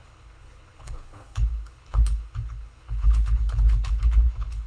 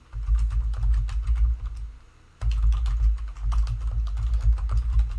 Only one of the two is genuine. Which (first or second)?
second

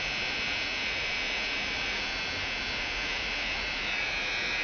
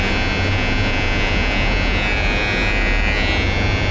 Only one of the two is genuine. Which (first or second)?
second